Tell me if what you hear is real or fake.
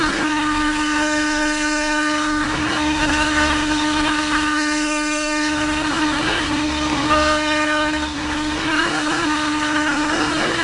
fake